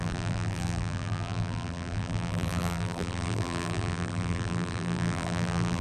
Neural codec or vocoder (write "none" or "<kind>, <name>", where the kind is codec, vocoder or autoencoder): vocoder, BigVGAN v2